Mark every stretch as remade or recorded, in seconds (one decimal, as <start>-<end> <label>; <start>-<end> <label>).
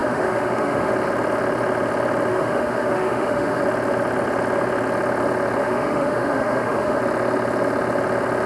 0.0-0.9 remade; 0.9-2.3 recorded; 2.3-3.6 remade; 3.6-5.6 recorded; 5.6-7.0 remade; 7.0-8.5 recorded